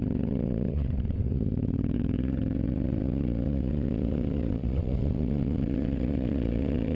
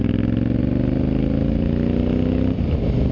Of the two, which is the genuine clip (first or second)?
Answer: second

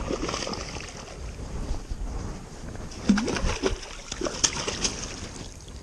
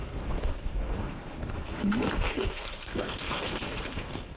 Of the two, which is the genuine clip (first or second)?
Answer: first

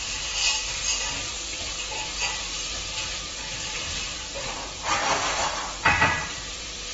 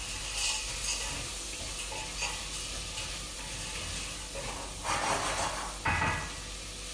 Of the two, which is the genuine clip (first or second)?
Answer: second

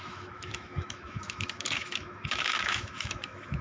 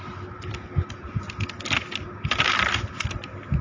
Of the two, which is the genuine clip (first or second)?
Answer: second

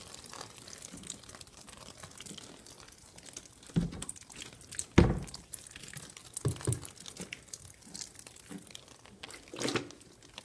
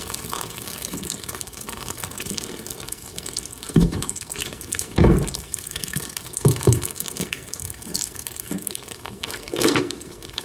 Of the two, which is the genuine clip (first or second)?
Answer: first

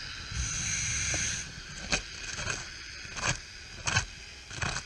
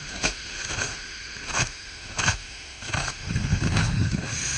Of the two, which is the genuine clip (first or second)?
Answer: first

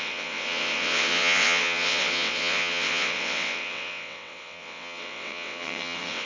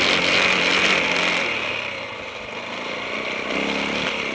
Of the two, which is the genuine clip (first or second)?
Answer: second